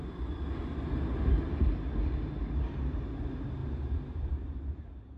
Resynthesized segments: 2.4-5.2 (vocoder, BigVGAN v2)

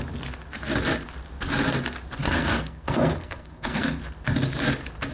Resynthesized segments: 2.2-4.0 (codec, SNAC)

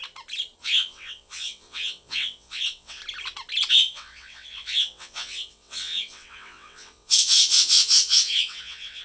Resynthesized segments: 0.6-3.0 (vocoder, WaveNeXt); 3.7-9.0